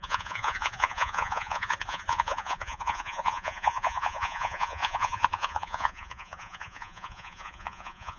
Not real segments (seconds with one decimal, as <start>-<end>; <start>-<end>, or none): 0.0-8.2